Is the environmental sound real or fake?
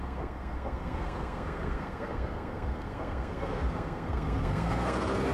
fake